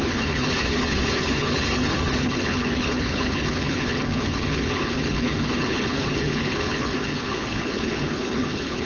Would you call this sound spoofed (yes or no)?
yes